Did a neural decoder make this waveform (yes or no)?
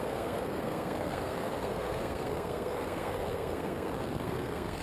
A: yes